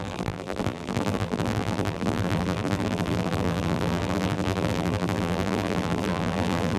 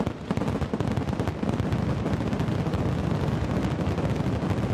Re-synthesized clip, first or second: first